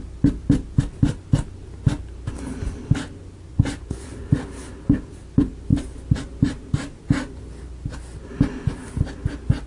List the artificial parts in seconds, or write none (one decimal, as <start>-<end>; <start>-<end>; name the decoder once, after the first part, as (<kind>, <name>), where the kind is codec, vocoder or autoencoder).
3.5-4.3 (vocoder, Vocos)